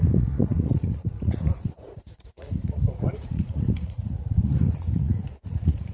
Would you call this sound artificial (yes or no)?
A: yes